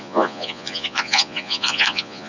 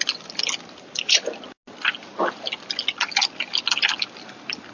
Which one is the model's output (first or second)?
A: first